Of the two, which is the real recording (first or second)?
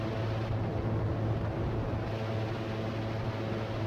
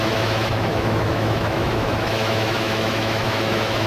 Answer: first